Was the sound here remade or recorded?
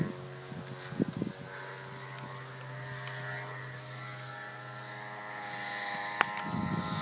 recorded